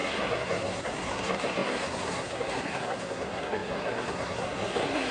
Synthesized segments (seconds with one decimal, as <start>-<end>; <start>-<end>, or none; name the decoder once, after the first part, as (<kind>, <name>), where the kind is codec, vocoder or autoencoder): 0.0-5.1 (codec, SNAC)